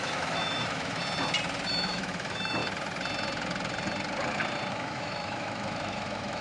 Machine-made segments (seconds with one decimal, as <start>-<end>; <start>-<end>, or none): 0.0-1.0; 1.7-2.6; 4.7-6.4